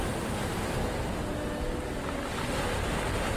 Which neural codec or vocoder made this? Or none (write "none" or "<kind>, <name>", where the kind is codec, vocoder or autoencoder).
none